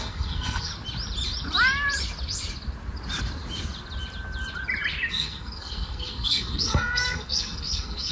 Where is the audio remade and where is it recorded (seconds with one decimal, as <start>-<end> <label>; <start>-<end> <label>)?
0.0-0.7 remade; 0.7-5.1 recorded; 5.1-8.1 remade